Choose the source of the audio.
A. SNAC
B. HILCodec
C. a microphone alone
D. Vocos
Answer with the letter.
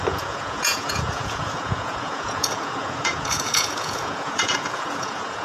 D